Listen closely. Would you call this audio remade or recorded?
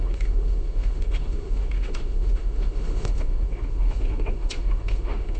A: remade